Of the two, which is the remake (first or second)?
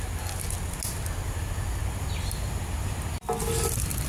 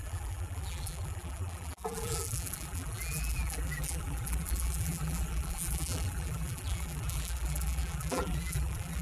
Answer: second